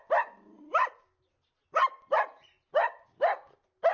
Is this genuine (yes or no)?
yes